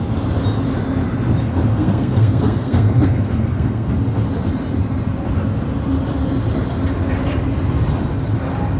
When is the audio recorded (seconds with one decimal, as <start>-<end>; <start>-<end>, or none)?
0.0-1.7; 3.9-8.8